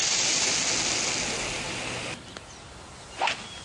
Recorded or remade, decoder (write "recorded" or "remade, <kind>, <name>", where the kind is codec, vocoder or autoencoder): recorded